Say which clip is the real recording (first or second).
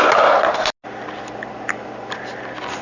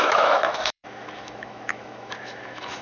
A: first